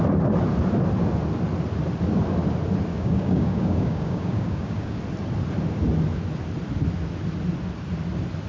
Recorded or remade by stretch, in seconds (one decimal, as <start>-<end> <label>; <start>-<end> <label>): 0.0-2.9 recorded; 2.9-5.0 remade; 5.0-8.5 recorded